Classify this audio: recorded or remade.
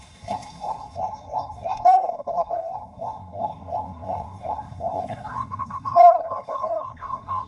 remade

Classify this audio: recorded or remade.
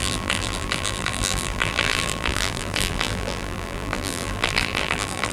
remade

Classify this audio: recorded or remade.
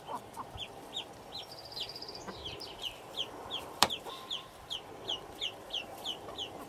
remade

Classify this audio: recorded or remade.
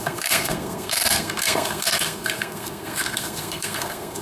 remade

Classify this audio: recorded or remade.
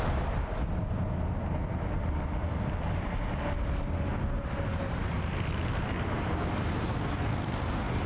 recorded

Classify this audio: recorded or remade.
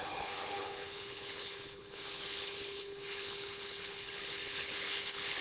remade